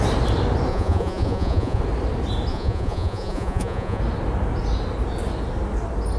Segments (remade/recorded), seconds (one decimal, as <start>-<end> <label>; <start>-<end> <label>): 0.0-0.7 recorded; 0.7-1.8 remade; 1.8-2.5 recorded; 2.5-4.0 remade; 4.0-6.2 recorded